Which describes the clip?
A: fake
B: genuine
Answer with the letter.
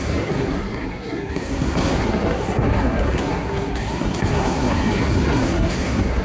A